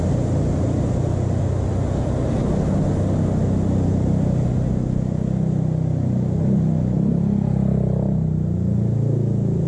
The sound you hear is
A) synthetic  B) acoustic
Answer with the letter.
B